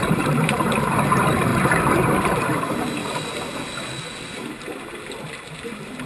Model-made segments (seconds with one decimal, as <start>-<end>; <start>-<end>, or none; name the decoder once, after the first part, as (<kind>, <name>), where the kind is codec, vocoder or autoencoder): 0.0-1.5 (vocoder, BigVGAN v2); 2.1-3.0; 5.6-6.1